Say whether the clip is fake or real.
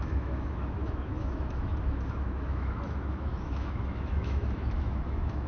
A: fake